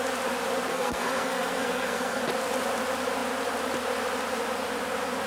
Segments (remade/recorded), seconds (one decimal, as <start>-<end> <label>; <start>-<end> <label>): 0.0-0.7 recorded; 0.7-2.2 remade; 2.2-5.3 recorded